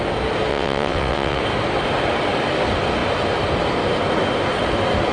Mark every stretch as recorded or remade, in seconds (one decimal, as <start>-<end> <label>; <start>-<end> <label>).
0.0-0.5 recorded; 0.5-1.4 remade; 1.4-5.1 recorded